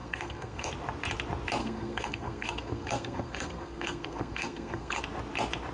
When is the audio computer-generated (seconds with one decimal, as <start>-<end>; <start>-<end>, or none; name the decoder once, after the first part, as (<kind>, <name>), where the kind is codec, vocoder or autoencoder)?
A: 0.0-0.7 (codec, SNAC); 1.6-5.0